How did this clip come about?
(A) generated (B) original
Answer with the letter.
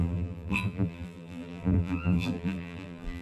A